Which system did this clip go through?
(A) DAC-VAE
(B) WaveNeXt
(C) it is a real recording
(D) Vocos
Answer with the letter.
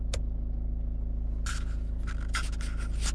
C